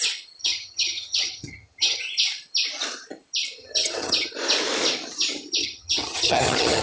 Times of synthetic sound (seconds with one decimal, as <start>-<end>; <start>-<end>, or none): 0.4-2.0; 3.6-4.3; 5.6-6.8